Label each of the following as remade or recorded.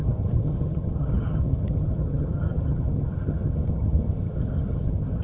remade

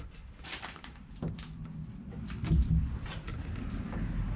recorded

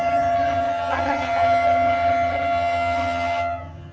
remade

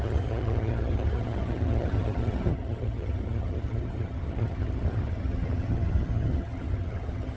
remade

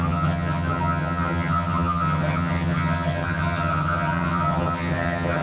remade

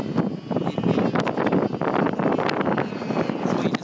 recorded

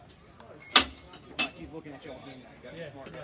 recorded